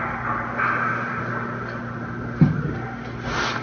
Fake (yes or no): no